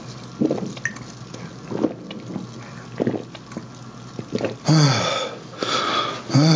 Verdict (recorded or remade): recorded